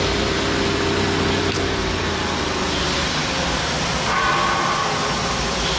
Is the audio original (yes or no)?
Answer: no